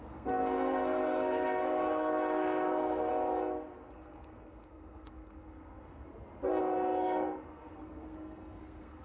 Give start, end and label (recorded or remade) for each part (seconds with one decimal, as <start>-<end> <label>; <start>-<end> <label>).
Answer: 0.0-3.1 remade; 3.1-3.9 recorded; 3.9-6.1 remade; 6.1-6.6 recorded; 6.6-9.0 remade